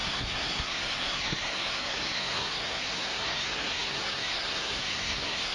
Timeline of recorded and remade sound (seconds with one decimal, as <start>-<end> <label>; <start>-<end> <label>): 0.0-5.5 remade